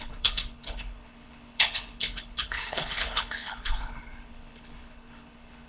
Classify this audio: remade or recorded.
remade